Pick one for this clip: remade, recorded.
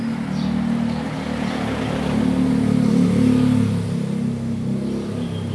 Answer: recorded